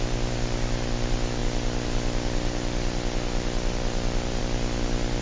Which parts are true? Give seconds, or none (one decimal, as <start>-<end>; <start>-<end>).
0.0-5.2